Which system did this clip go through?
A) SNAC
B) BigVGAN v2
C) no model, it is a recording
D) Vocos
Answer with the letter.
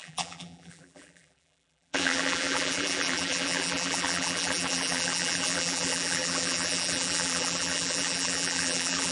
B